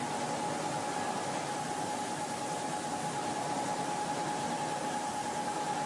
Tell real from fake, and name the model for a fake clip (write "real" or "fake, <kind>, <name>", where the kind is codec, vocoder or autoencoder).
real